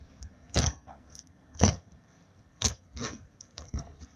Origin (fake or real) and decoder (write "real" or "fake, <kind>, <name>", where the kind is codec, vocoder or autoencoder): fake, codec, SNAC